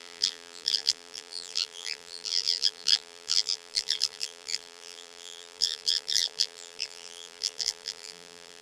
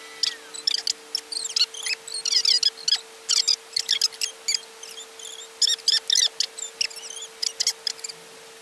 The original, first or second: second